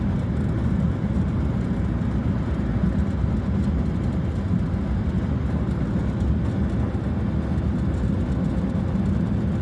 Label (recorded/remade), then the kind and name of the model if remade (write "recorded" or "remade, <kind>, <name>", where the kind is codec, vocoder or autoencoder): recorded